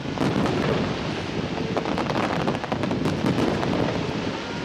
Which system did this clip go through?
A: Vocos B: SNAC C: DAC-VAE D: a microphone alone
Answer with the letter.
D